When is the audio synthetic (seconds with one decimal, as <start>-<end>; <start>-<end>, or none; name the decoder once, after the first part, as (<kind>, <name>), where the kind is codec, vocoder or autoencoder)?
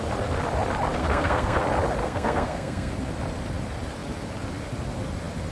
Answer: 1.0-1.6 (codec, SNAC); 2.0-2.9